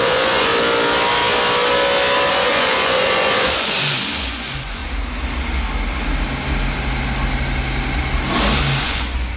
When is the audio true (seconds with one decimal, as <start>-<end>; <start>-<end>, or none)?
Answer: 0.5-2.3; 4.8-8.8